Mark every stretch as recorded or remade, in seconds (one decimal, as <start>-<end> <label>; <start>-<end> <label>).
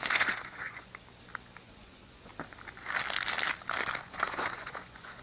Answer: 0.0-0.9 remade; 0.9-1.6 recorded; 1.6-2.3 remade; 2.3-4.0 recorded; 4.0-5.2 remade